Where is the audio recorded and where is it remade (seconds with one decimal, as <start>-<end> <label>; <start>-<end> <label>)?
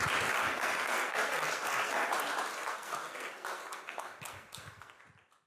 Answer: 0.0-0.4 recorded; 0.4-2.1 remade; 2.1-2.5 recorded; 2.5-5.0 remade; 5.0-5.5 recorded